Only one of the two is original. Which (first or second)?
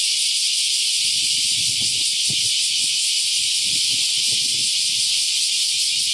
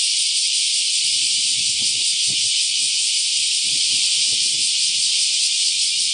first